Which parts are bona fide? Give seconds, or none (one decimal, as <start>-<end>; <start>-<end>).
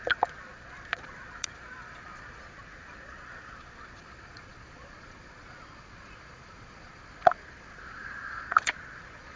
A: none